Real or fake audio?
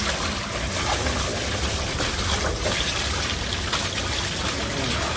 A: real